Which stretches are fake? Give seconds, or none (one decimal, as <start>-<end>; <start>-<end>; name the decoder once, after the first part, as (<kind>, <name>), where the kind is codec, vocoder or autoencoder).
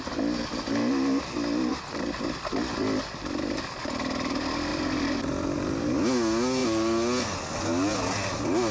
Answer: 1.7-2.5 (vocoder, BigVGAN v2); 4.7-5.2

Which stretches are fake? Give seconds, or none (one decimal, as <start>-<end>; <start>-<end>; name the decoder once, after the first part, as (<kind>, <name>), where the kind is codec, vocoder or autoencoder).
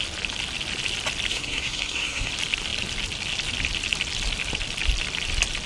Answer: 1.3-2.3 (codec, SNAC)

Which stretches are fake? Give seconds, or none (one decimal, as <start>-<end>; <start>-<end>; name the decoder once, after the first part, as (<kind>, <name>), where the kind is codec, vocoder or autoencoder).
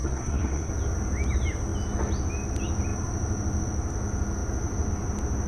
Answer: 0.0-0.7 (codec, SNAC)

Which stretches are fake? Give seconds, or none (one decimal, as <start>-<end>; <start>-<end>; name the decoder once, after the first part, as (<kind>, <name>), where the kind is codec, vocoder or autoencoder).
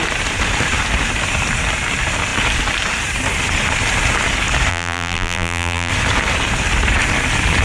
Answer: 4.7-5.9 (vocoder, BigVGAN v2)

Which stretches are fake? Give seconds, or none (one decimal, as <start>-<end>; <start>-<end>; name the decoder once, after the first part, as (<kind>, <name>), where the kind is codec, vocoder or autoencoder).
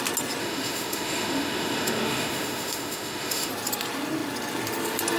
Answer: 0.4-3.5 (autoencoder, DAC-VAE)